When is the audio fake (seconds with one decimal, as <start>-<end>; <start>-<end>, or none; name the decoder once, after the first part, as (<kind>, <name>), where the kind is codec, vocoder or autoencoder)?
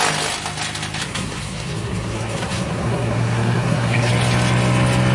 1.0-4.1 (codec, SNAC)